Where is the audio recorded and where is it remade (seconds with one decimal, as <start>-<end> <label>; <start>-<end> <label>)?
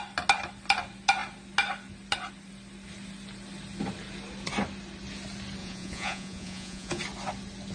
0.0-5.6 recorded; 5.6-7.0 remade; 7.0-7.7 recorded